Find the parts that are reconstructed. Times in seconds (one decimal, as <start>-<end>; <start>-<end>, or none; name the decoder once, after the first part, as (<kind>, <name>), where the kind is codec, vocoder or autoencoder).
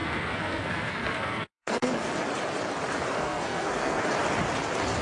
0.0-2.1 (codec, SNAC); 3.1-4.0